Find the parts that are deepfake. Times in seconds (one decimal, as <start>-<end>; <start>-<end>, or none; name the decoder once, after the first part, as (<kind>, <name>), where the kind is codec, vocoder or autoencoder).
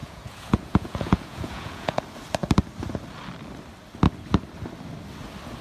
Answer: 0.0-2.0 (vocoder, Vocos)